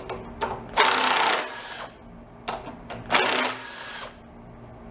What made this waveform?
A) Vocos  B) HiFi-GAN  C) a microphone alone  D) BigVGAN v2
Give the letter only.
C